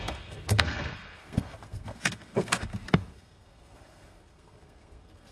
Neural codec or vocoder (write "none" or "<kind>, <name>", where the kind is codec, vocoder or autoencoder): codec, SNAC